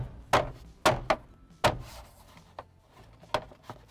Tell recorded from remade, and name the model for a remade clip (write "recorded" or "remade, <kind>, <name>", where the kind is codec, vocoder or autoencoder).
recorded